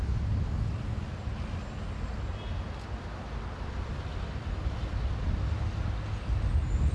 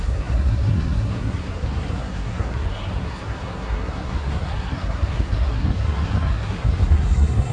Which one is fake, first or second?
second